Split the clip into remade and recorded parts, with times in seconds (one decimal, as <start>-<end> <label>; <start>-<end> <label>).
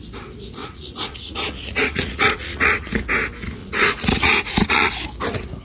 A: 0.0-0.6 recorded; 0.6-2.9 remade; 2.9-3.6 recorded; 3.6-4.9 remade; 4.9-5.6 recorded